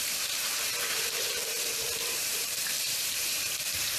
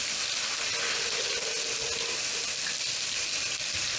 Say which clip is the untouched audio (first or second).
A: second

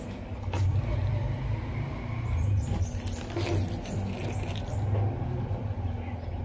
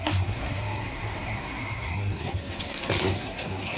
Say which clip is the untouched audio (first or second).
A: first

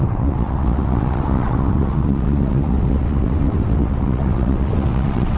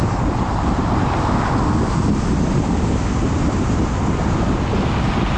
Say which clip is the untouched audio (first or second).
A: second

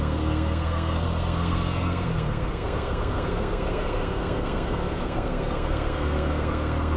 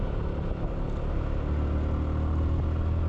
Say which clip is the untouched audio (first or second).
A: second